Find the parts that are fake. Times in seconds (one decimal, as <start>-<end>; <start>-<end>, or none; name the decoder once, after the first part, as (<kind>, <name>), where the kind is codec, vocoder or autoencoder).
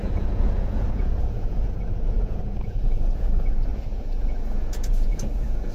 0.0-5.7 (vocoder, Vocos)